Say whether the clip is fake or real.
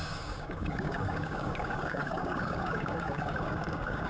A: fake